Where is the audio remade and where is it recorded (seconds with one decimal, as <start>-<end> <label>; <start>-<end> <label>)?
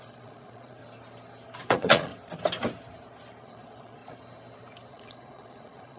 0.0-0.8 remade; 0.8-1.6 recorded; 1.6-2.1 remade; 2.1-3.4 recorded; 3.4-4.0 remade; 4.0-4.9 recorded; 4.9-6.0 remade